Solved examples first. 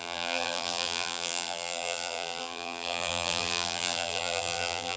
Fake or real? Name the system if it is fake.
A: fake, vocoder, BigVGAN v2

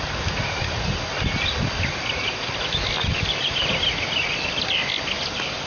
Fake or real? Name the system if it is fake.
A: fake, vocoder, BigVGAN v2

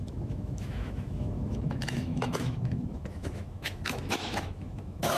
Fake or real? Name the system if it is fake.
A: fake, autoencoder, DAC-VAE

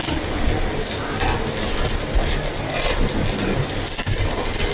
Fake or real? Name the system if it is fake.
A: real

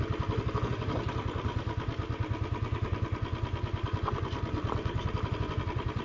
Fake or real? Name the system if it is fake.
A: real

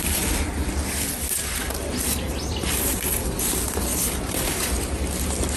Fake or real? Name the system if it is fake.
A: real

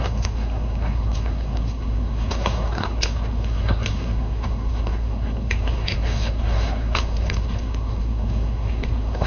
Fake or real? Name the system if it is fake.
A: fake, codec, SNAC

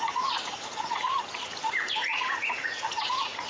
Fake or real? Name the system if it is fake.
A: fake, vocoder, Vocos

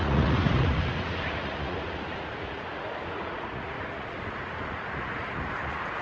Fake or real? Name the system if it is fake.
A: fake, vocoder, Vocos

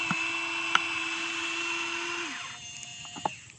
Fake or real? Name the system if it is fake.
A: real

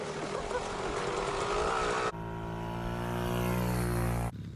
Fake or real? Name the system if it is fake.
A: real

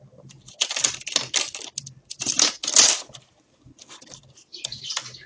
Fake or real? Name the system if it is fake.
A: real